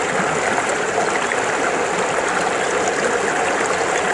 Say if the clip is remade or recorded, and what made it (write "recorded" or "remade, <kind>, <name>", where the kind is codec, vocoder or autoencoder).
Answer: recorded